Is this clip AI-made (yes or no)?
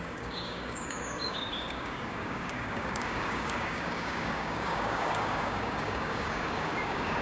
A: yes